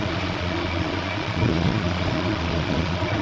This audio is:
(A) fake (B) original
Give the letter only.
A